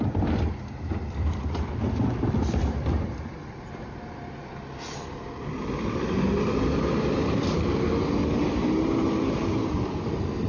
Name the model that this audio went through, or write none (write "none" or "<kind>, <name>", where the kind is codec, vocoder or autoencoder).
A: vocoder, BigVGAN v2